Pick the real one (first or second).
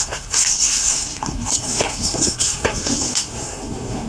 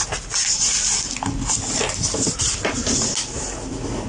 second